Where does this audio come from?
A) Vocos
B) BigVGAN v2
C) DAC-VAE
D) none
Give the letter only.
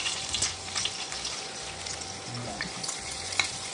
A